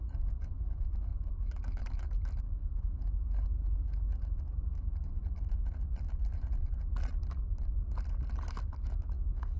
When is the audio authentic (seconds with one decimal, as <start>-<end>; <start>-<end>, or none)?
5.2-8.5